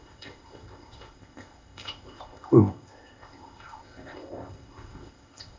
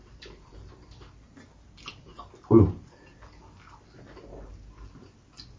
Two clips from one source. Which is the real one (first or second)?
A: second